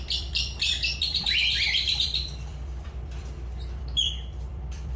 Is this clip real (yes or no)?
no